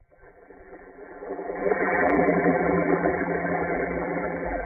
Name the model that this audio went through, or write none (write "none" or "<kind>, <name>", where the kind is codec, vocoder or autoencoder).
vocoder, BigVGAN v2